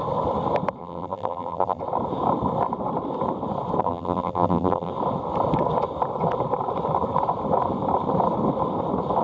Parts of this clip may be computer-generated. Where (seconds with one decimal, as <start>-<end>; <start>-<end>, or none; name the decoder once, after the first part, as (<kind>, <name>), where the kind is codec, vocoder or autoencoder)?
0.8-1.8 (vocoder, BigVGAN v2); 3.8-4.9